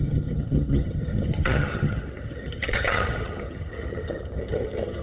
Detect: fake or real fake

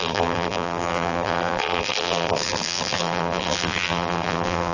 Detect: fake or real fake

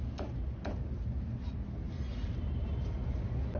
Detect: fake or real real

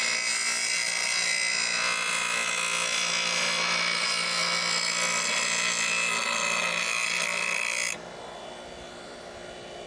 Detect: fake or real real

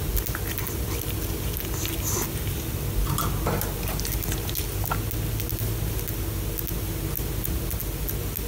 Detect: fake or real real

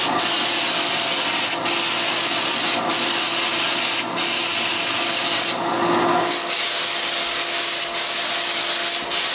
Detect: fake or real real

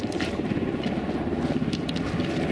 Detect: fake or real real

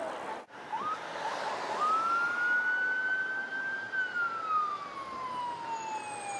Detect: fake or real real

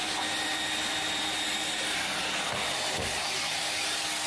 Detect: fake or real real